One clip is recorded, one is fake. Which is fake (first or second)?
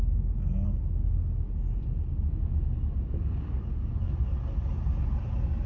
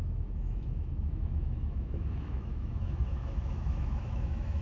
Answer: second